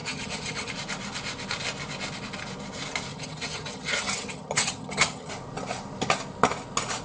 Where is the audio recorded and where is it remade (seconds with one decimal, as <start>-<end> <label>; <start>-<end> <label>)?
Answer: 0.0-0.7 remade; 0.7-3.1 recorded; 3.1-5.3 remade; 5.3-7.0 recorded